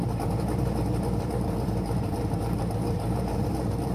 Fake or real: fake